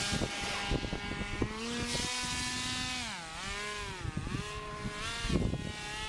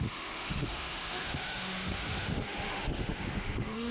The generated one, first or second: second